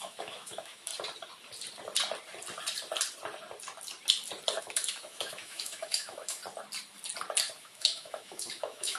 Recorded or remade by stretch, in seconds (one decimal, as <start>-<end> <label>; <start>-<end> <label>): 0.0-0.9 remade; 0.9-4.6 recorded; 4.6-6.4 remade; 6.4-7.6 recorded; 7.6-9.0 remade